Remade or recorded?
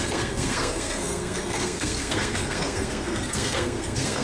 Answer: remade